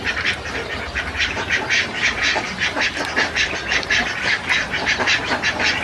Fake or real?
fake